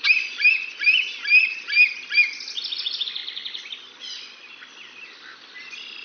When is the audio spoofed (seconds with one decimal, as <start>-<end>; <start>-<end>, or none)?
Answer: none